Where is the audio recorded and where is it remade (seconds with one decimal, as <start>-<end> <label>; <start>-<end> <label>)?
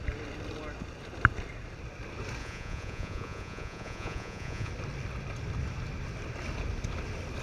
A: 0.0-2.4 recorded; 2.4-4.7 remade; 4.7-7.4 recorded